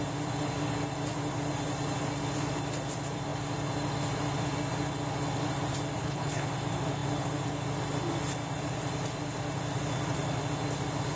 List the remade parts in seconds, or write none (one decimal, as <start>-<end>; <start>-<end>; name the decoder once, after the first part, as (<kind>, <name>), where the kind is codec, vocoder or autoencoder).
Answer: 6.0-6.5 (codec, HILCodec)